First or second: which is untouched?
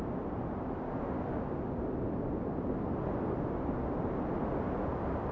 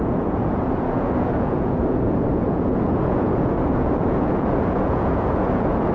first